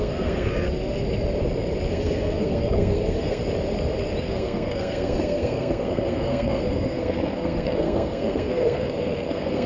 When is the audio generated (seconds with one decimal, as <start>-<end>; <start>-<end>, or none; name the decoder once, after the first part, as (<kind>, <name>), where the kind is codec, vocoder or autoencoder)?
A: 0.0-0.5 (codec, SNAC); 1.9-3.4; 4.2-9.7